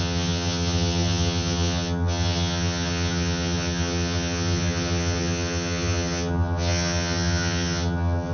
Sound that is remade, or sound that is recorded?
remade